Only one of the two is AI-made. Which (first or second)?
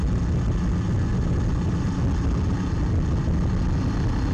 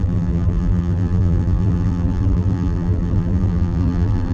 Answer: second